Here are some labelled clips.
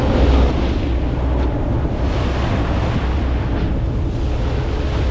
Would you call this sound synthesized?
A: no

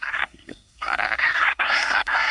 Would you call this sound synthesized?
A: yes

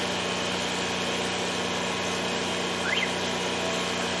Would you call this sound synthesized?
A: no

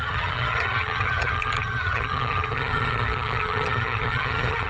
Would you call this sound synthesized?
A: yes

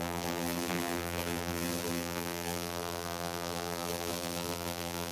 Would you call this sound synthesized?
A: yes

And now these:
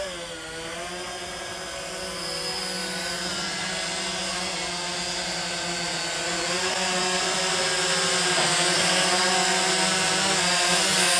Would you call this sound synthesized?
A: no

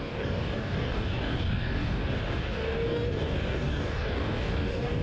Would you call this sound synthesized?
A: yes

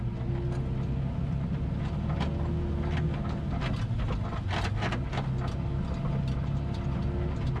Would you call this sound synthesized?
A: no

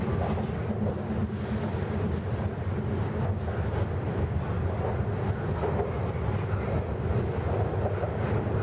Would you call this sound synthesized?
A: no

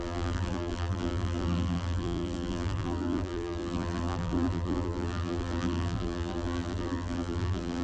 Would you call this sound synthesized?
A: yes